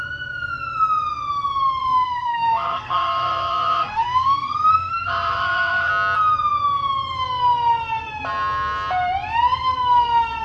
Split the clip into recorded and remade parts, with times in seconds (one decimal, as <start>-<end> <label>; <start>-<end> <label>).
0.0-1.8 recorded; 1.8-5.9 remade; 5.9-10.4 recorded

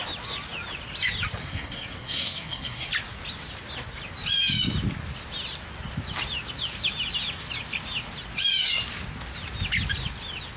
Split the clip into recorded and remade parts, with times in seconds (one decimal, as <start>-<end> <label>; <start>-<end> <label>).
0.0-1.4 recorded; 1.4-2.9 remade; 2.9-10.6 recorded